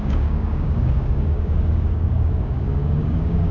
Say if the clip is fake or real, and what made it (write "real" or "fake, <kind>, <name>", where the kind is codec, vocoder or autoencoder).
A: fake, codec, DAC